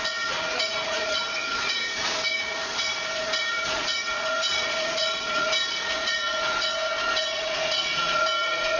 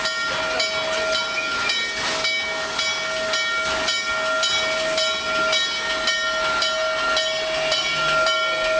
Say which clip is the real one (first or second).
second